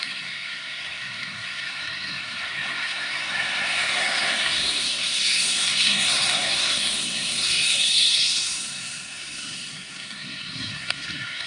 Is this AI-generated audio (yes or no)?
yes